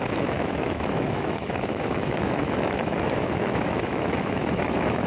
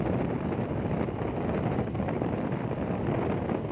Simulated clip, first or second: first